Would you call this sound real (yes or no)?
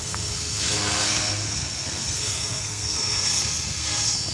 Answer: no